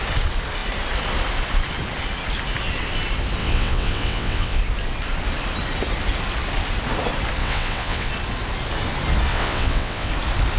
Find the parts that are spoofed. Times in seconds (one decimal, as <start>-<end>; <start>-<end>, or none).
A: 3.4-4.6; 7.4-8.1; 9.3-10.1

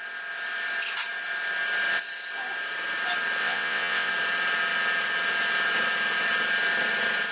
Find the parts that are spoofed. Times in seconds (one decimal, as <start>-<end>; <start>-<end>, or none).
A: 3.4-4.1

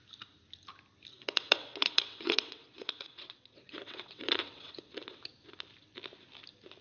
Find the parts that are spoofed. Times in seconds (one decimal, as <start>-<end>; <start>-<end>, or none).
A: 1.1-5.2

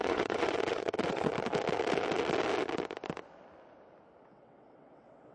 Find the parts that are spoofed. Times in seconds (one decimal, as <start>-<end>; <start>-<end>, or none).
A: 0.0-1.3; 4.2-5.3

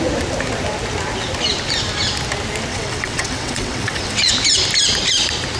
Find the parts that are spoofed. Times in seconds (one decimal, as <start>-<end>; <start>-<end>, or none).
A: 2.7-4.3

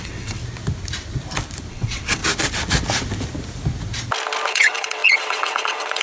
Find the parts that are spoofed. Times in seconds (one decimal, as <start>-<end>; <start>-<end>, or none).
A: 0.0-0.4; 1.7-2.2; 4.5-6.0